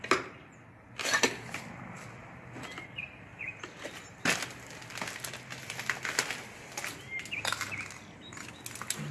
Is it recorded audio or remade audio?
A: recorded